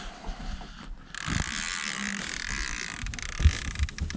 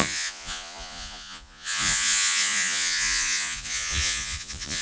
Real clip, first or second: first